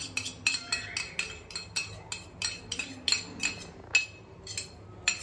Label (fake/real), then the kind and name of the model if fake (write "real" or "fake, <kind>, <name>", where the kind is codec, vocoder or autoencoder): real